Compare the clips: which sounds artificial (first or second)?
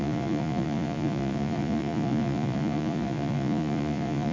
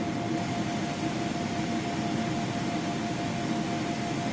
first